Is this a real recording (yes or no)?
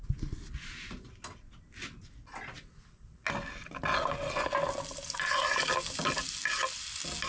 yes